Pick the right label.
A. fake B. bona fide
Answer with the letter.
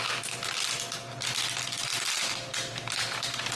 B